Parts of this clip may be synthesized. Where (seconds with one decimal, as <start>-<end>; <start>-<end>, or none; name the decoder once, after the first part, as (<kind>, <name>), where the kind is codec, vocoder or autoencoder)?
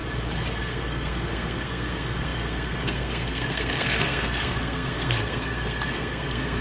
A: 0.6-6.6 (codec, SNAC)